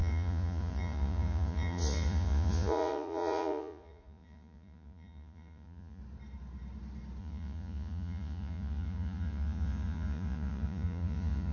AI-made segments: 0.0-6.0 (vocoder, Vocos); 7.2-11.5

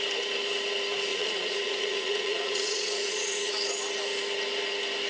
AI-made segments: 1.1-3.5 (vocoder, Vocos)

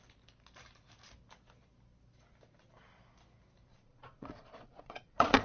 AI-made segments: 3.7-5.4 (vocoder, Vocos)

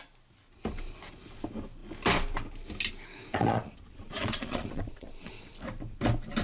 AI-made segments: 3.3-5.5 (vocoder, Vocos)

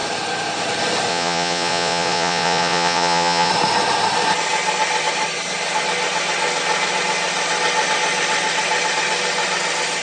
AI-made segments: 1.1-3.5 (vocoder, Vocos)

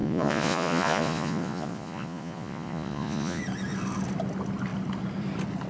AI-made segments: 0.0-3.4 (vocoder, Vocos)

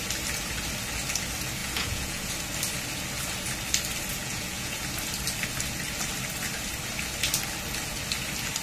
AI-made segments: 1.6-2.3 (vocoder, Vocos); 4.1-4.8